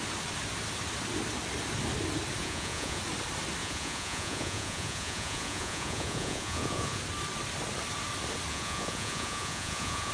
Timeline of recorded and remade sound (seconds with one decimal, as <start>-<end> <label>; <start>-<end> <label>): 0.0-2.4 recorded; 2.4-3.0 remade; 3.0-3.6 recorded; 3.6-7.0 remade; 7.0-8.5 recorded; 8.5-10.1 remade